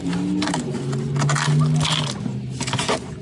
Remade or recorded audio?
recorded